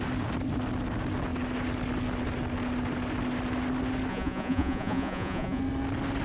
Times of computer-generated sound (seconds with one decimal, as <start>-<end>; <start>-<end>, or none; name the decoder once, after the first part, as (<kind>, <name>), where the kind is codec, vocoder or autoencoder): 4.1-5.6 (vocoder, Vocos)